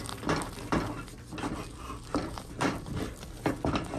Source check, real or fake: real